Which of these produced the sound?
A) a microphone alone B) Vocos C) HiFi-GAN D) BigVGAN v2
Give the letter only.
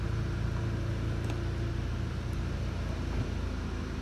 A